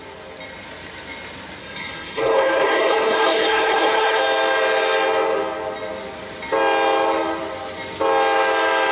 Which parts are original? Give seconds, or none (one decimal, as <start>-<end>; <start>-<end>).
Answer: 0.0-1.6; 4.2-8.9